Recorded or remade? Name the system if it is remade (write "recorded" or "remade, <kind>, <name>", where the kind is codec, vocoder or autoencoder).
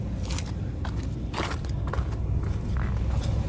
recorded